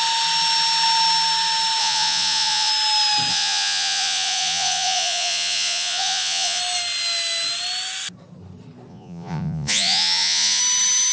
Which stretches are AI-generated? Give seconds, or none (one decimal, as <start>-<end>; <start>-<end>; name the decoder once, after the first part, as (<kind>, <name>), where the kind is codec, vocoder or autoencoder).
1.8-2.7 (vocoder, Vocos); 3.3-6.6; 8.9-10.6